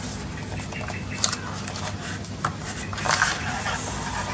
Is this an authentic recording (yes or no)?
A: yes